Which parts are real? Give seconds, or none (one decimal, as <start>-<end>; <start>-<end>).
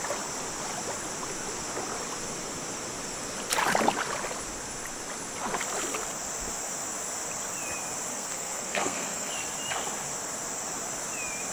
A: 0.0-8.1; 9.3-11.5